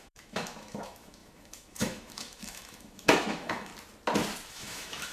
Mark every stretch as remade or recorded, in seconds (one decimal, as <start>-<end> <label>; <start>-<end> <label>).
0.0-3.7 remade; 3.7-4.5 recorded; 4.5-5.1 remade